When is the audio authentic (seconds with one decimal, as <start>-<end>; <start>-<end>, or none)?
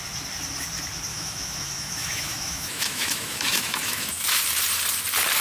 0.0-1.1; 4.3-5.4